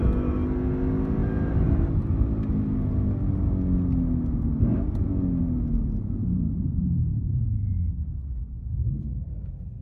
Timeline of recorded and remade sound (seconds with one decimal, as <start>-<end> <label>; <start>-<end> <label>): 0.0-1.2 recorded; 1.2-1.7 remade; 1.7-6.2 recorded; 6.2-7.4 remade; 7.4-8.8 recorded; 8.8-9.8 remade